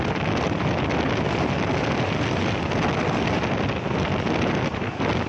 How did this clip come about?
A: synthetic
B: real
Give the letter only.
B